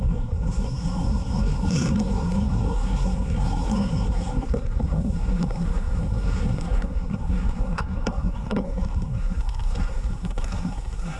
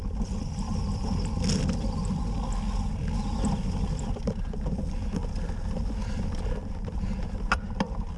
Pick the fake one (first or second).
first